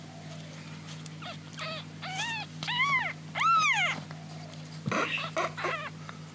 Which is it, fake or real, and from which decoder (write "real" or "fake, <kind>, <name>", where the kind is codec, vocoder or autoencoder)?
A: real